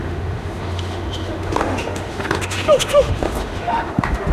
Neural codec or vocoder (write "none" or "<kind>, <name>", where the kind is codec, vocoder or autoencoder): autoencoder, DAC-VAE